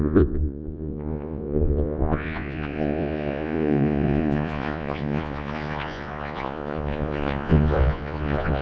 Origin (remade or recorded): remade